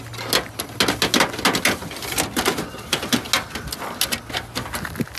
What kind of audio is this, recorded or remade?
recorded